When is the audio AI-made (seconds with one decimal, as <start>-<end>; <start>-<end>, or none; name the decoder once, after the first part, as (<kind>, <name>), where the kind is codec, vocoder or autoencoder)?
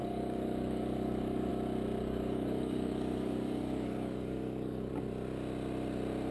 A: 0.0-1.5 (codec, DAC); 2.0-4.9